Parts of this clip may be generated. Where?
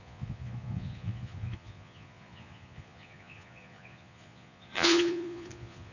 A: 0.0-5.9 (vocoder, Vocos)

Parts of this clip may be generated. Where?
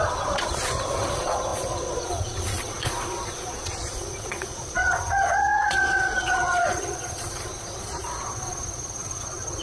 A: 0.0-9.6 (vocoder, Vocos)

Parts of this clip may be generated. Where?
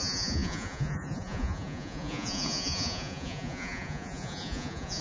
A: 0.0-5.0 (vocoder, Vocos)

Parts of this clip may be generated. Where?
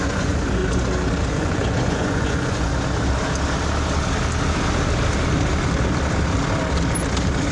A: 0.0-0.6 (vocoder, Vocos); 1.3-2.7